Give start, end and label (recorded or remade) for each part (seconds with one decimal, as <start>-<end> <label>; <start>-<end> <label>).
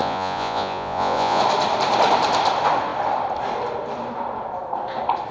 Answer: 0.0-1.4 remade; 1.4-5.3 recorded